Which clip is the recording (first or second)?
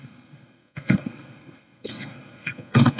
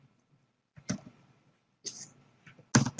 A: second